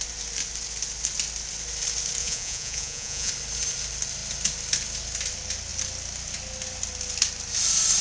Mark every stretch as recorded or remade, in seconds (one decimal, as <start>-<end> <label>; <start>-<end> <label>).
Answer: 0.0-2.2 recorded; 2.2-3.3 remade; 3.3-8.0 recorded